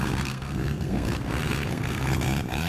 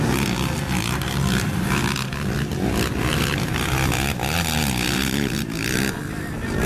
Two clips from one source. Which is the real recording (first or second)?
second